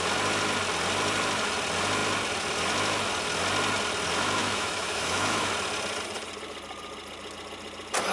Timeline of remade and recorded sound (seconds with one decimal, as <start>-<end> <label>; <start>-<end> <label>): 0.0-4.4 recorded; 4.4-5.5 remade; 5.5-8.1 recorded